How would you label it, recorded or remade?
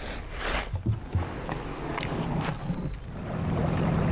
recorded